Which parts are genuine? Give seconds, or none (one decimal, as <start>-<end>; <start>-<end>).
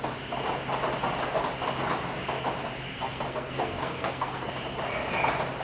0.0-2.9; 4.5-5.6